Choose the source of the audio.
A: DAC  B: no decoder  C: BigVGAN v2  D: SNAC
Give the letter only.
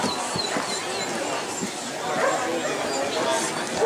B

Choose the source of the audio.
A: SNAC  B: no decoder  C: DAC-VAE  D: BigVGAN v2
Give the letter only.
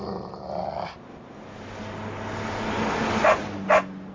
B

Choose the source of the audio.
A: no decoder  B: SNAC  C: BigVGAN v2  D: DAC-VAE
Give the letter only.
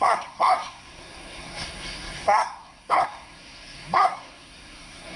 B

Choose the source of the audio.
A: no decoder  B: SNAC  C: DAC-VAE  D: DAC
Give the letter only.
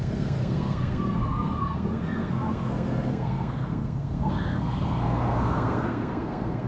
B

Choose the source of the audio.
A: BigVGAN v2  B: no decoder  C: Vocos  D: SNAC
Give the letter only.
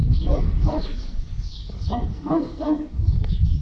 D